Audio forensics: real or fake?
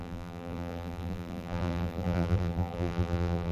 fake